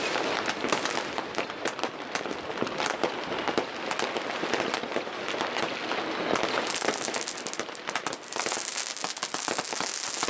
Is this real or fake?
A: real